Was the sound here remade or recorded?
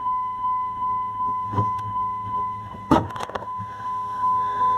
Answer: remade